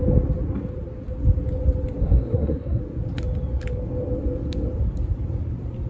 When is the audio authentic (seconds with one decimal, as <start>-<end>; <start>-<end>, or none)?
0.0-2.0; 2.8-5.9